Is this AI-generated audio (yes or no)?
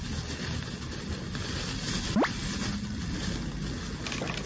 no